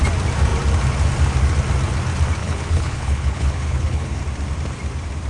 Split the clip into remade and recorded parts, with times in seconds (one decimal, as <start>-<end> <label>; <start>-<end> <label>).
0.0-2.4 recorded; 2.4-4.2 remade; 4.2-5.3 recorded